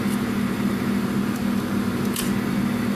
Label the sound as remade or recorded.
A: recorded